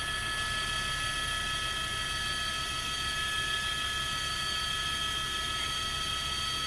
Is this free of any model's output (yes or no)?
yes